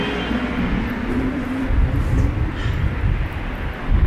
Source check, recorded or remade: recorded